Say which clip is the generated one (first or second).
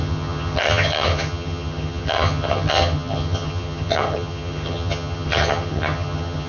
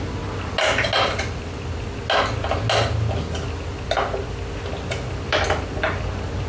first